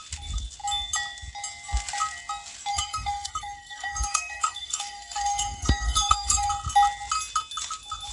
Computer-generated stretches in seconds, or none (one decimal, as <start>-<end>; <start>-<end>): 2.7-6.5